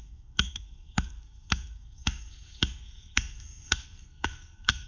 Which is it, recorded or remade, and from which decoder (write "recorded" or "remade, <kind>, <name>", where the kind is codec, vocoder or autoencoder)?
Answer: remade, codec, SNAC